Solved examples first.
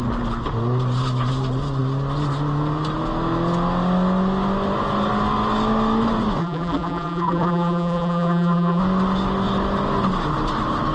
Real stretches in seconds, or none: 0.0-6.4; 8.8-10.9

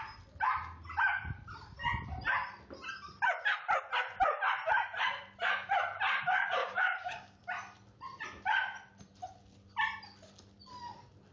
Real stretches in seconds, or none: 0.0-6.6; 7.4-11.3

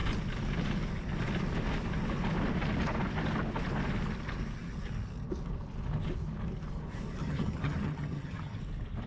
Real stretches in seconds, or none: 0.0-7.2; 8.6-9.1

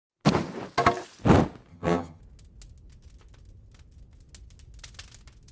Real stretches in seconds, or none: 0.0-1.7; 2.2-5.5

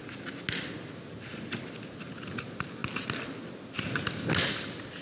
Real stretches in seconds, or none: 0.0-5.0